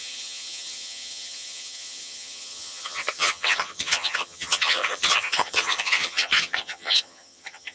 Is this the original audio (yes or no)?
no